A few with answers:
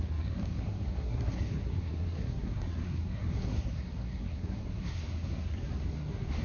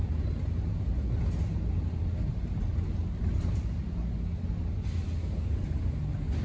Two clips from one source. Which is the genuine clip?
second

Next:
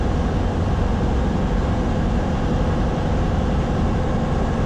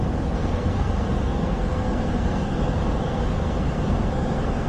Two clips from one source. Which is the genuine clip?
first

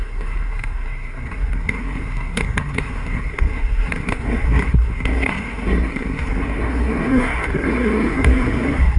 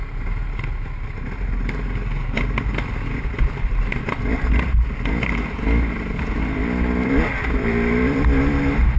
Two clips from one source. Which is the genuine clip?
second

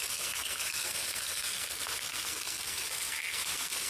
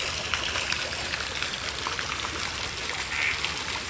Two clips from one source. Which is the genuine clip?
second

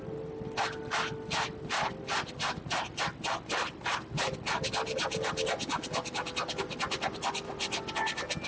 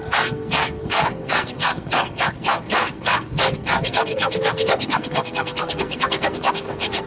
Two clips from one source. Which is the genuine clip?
first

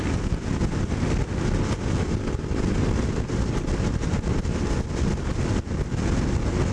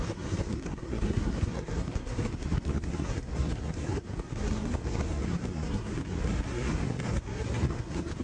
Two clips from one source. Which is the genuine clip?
first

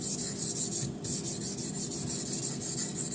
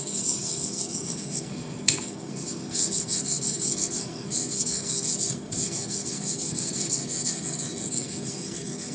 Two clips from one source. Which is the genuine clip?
first